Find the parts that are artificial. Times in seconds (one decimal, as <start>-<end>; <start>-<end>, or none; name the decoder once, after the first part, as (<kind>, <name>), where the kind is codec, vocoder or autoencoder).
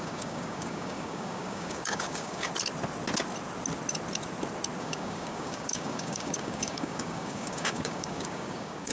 0.0-2.5 (codec, DAC); 4.8-8.9